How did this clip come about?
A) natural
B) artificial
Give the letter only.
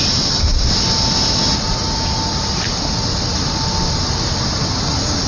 A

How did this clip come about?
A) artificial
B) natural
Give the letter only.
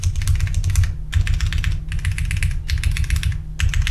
B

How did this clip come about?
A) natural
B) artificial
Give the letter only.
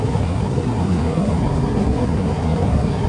B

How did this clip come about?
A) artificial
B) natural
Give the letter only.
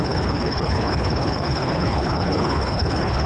A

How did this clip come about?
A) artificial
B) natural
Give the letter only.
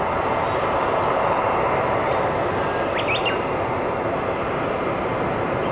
B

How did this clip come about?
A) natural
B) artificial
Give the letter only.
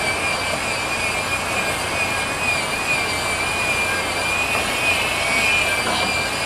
A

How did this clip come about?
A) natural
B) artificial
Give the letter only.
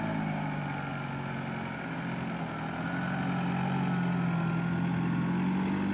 A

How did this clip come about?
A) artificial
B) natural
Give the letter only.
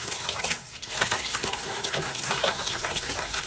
A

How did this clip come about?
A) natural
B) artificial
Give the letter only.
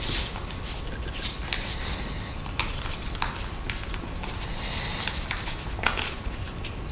A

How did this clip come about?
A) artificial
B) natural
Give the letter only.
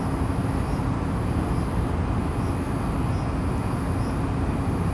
B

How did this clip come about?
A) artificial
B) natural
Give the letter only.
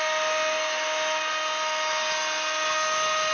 B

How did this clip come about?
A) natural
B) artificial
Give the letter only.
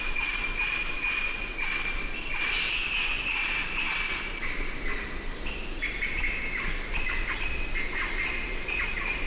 A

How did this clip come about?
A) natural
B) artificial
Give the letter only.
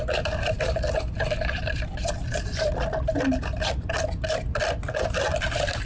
A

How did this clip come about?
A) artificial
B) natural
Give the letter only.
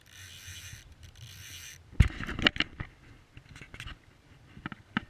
B